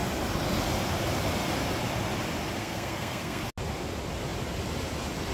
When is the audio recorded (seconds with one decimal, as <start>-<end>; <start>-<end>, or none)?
0.0-2.6; 3.4-5.3